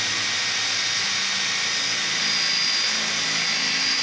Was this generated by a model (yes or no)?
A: no